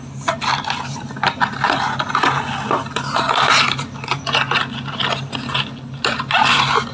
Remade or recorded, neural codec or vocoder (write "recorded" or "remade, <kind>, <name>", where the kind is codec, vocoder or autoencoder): recorded